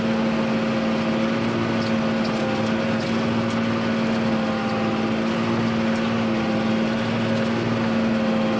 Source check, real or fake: real